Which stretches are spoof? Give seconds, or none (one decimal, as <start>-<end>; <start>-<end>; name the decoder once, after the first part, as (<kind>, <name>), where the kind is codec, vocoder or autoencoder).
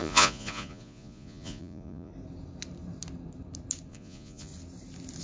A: 0.0-2.1 (vocoder, Vocos); 3.9-4.5